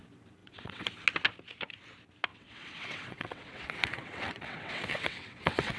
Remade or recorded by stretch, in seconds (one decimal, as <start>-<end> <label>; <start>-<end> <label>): 0.0-0.4 recorded; 0.4-0.9 remade; 0.9-2.3 recorded; 2.3-5.8 remade

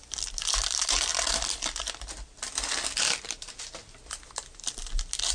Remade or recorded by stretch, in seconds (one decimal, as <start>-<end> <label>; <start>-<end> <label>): 0.0-5.3 recorded

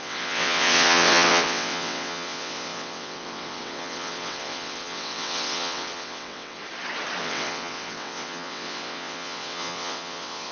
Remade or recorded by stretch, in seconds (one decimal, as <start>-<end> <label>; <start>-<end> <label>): 0.0-6.6 remade; 6.6-7.2 recorded; 7.2-10.5 remade

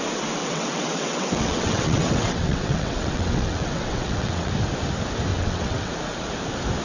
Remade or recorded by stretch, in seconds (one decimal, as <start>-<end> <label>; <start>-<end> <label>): 0.0-0.4 recorded; 0.4-4.5 remade; 4.5-5.3 recorded; 5.3-5.9 remade; 5.9-6.8 recorded